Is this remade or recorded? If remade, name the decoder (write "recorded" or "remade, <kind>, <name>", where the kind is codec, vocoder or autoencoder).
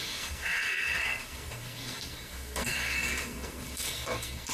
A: remade, codec, SNAC